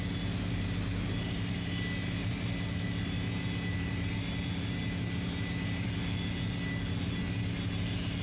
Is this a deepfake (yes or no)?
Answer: no